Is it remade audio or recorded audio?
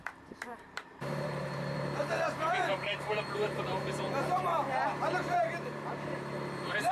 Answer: remade